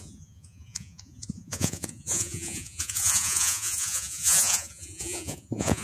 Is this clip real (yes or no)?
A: no